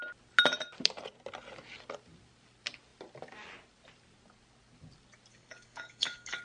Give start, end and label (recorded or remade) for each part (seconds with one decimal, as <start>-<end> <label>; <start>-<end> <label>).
0.0-5.3 recorded; 5.3-6.4 remade

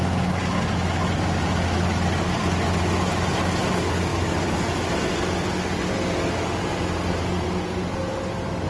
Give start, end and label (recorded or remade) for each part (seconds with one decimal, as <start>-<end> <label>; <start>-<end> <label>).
0.0-8.7 recorded

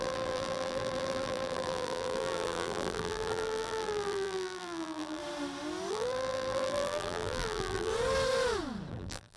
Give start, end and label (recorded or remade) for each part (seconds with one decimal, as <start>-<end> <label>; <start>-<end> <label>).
0.0-5.2 remade; 5.2-5.9 recorded; 5.9-7.9 remade; 7.9-8.9 recorded; 8.9-9.4 remade

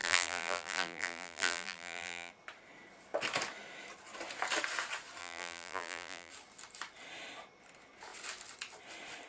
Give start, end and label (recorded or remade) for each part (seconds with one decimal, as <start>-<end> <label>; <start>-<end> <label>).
0.0-2.3 remade; 2.3-5.2 recorded; 5.2-6.3 remade; 6.3-9.3 recorded

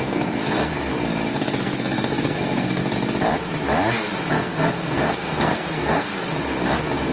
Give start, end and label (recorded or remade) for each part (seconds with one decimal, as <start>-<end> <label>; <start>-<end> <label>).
0.0-0.7 remade; 0.7-1.3 recorded; 1.3-2.8 remade; 2.8-4.3 recorded; 4.3-6.1 remade; 6.1-7.1 recorded

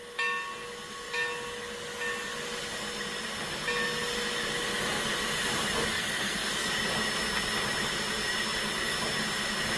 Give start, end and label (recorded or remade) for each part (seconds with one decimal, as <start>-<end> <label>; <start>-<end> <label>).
0.0-5.9 recorded; 5.9-6.7 remade; 6.7-9.8 recorded

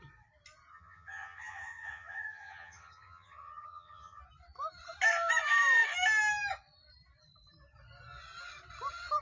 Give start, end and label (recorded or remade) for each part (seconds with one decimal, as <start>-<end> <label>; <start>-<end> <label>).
0.0-0.7 recorded; 0.7-4.2 remade; 4.2-9.2 recorded